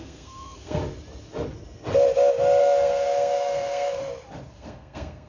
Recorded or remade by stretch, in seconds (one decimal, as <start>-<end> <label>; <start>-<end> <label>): 0.0-0.8 remade; 0.8-2.6 recorded; 2.6-4.0 remade; 4.0-4.5 recorded; 4.5-5.3 remade